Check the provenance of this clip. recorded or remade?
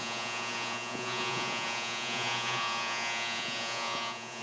remade